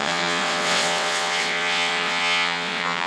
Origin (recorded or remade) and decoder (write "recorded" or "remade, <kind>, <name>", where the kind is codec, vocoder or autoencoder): remade, vocoder, WaveNeXt